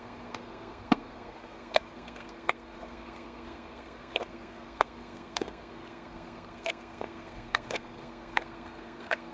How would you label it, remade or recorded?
remade